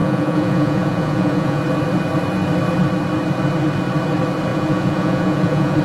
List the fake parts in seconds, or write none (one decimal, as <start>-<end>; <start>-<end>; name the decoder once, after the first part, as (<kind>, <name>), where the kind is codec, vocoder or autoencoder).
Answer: 0.0-1.6 (vocoder, Vocos); 4.5-5.8